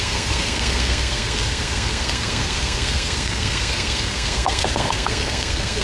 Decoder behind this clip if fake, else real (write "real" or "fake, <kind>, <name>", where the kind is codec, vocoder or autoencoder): fake, codec, SNAC